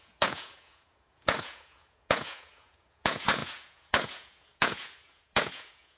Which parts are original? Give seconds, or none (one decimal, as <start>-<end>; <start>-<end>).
none